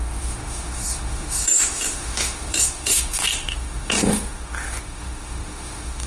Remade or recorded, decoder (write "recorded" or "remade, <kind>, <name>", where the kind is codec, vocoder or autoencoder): remade, autoencoder, DAC-VAE